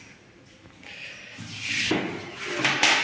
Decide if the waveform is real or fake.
fake